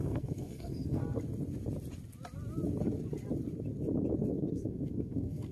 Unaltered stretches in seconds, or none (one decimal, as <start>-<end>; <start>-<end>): 1.0-4.2